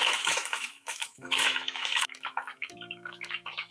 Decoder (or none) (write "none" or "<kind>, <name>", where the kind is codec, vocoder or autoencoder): autoencoder, DAC-VAE